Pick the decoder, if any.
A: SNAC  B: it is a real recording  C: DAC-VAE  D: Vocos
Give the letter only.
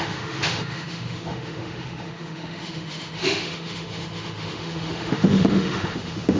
C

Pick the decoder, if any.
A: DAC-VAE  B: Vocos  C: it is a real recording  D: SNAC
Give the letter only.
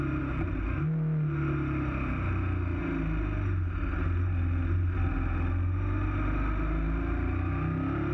C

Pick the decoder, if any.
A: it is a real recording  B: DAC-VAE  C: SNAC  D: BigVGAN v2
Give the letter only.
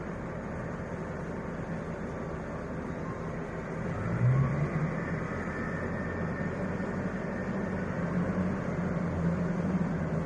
A